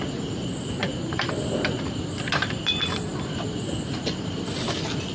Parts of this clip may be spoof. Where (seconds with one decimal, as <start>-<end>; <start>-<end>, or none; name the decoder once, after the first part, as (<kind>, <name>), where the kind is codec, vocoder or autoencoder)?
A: 0.8-2.6 (vocoder, BigVGAN v2)